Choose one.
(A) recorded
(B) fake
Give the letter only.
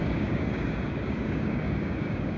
B